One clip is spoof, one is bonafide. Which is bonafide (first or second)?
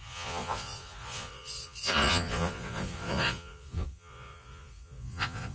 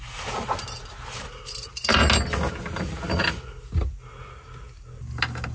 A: second